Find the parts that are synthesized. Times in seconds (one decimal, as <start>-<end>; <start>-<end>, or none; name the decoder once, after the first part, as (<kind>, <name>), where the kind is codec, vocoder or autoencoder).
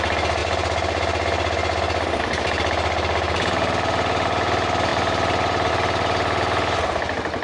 4.9-5.7 (vocoder, BigVGAN v2)